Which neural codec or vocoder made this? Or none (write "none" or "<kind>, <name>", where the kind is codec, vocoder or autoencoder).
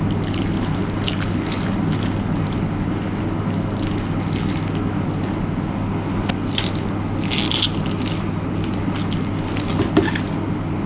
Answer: none